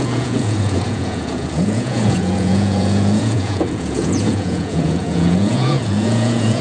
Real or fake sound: fake